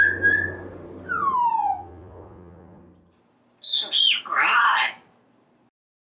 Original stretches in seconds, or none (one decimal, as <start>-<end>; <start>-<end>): 0.0-1.6; 2.8-6.0